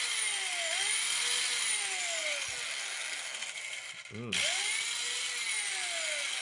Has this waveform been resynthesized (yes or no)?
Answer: no